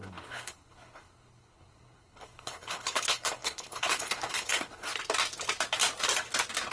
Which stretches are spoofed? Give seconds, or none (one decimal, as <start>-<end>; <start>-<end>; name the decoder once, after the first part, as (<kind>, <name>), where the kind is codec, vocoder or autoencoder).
0.0-4.9 (codec, HILCodec)